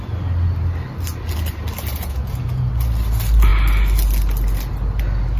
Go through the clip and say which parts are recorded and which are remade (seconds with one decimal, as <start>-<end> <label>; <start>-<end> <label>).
0.0-1.9 recorded; 1.9-2.7 remade; 2.7-5.4 recorded